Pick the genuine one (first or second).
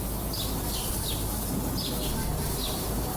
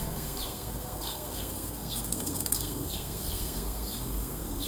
first